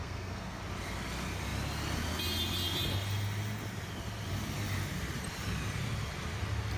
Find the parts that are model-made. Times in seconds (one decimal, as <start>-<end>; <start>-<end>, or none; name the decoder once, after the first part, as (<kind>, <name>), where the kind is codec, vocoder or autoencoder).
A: 0.0-0.6 (codec, SNAC)